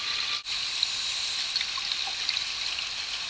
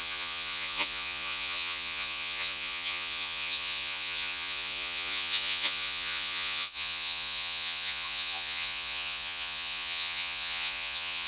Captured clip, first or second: first